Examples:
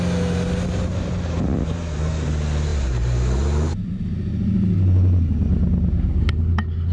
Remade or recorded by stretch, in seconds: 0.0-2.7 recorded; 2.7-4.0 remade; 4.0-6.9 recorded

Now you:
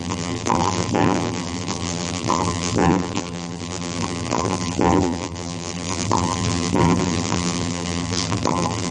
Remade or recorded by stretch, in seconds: 0.0-8.9 remade

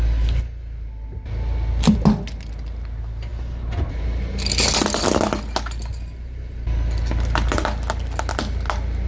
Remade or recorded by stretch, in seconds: 0.0-5.9 recorded; 5.9-6.4 remade; 6.4-9.1 recorded

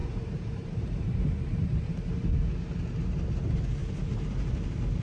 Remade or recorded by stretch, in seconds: 0.0-2.0 remade; 2.0-3.8 recorded; 3.8-4.5 remade; 4.5-5.0 recorded

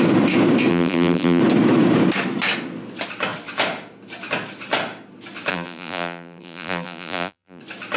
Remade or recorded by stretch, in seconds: 0.0-0.7 recorded; 0.7-1.4 remade; 1.4-5.5 recorded; 5.5-7.6 remade; 7.6-8.0 recorded